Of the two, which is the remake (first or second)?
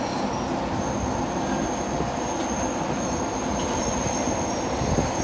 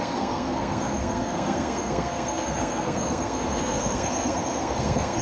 second